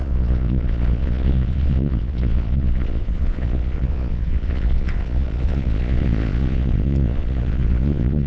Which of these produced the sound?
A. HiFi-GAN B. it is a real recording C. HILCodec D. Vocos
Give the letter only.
D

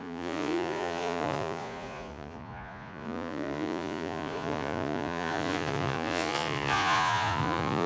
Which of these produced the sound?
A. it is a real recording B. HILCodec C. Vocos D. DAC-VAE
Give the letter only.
C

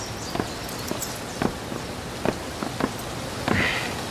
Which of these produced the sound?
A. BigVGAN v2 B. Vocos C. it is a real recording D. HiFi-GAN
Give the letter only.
C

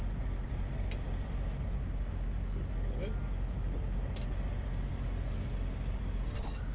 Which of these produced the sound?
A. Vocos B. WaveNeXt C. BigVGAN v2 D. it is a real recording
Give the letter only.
D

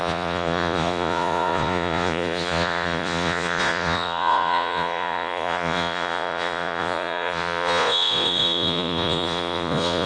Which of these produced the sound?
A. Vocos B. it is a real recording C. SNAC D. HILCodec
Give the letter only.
A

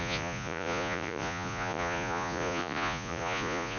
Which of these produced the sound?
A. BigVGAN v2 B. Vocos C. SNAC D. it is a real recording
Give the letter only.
B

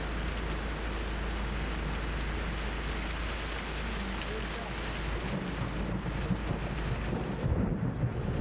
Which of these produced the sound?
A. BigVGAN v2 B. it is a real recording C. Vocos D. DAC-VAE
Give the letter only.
B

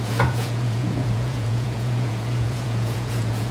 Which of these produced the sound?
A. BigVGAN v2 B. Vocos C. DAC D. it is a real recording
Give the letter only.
B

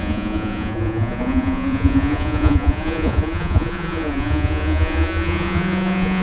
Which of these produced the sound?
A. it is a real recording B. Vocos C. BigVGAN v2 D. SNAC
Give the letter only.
B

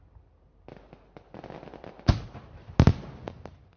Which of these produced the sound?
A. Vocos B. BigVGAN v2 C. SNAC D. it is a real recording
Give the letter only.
D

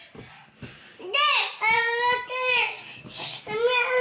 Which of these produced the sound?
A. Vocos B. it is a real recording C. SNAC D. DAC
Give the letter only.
B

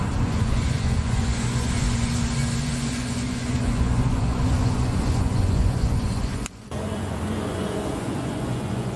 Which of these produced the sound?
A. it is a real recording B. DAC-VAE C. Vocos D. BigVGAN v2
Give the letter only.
C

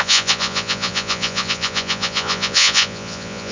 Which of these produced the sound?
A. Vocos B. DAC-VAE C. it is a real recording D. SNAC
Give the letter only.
A